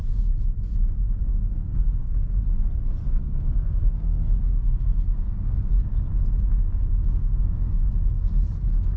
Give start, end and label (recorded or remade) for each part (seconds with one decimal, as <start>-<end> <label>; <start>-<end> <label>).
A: 0.0-1.3 recorded; 1.3-2.0 remade; 2.0-3.0 recorded; 3.0-5.6 remade; 5.6-7.2 recorded; 7.2-7.9 remade; 7.9-9.0 recorded